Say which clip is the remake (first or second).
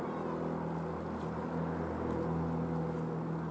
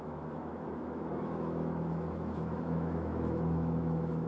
second